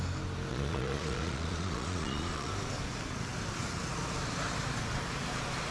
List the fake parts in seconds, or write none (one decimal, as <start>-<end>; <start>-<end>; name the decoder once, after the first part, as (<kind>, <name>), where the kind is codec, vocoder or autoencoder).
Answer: 0.5-2.5 (vocoder, Vocos)